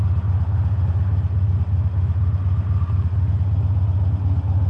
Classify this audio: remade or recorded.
recorded